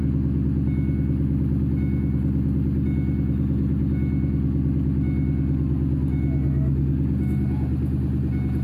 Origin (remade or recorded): recorded